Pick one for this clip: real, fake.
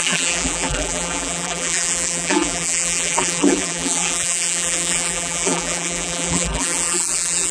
fake